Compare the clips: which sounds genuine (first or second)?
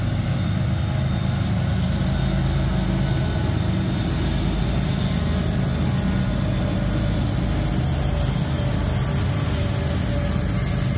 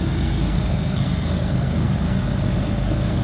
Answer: first